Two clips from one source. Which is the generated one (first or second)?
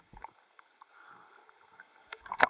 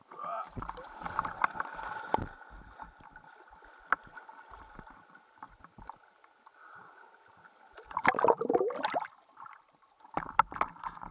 first